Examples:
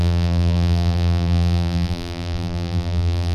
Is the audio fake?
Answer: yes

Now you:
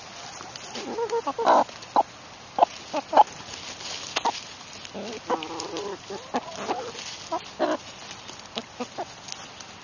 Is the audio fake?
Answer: no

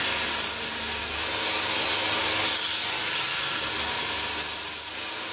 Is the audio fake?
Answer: no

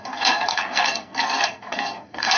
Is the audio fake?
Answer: yes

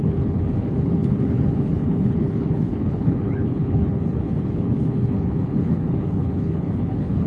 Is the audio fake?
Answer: yes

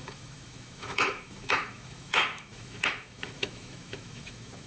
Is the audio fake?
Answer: yes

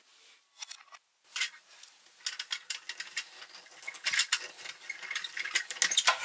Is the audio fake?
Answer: no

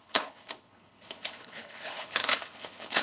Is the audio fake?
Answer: yes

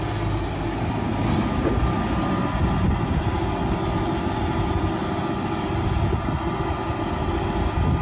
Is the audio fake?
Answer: no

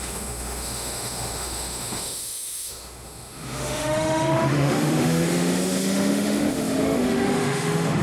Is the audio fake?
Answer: yes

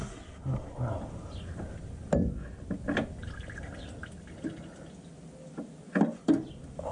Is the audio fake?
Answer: no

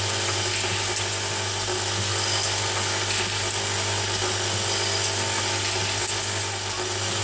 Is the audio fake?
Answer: no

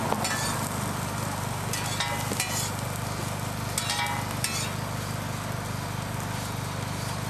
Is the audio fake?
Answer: no